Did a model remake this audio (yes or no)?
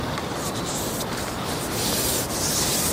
no